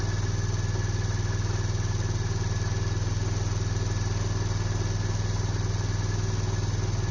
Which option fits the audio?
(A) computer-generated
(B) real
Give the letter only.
B